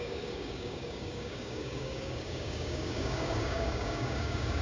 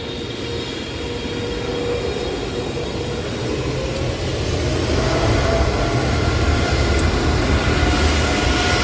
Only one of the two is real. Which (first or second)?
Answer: second